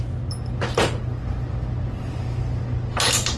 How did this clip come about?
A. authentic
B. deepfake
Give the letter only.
A